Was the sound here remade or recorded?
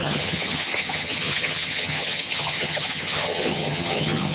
remade